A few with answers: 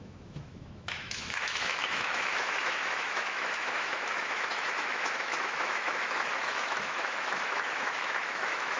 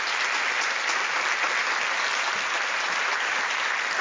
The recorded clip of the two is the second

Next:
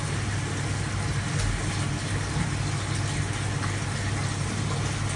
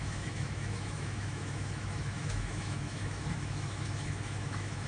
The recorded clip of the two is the first